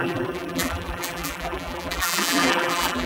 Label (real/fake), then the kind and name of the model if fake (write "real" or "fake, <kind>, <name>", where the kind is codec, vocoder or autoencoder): fake, vocoder, BigVGAN v2